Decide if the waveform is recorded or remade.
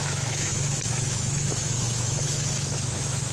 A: remade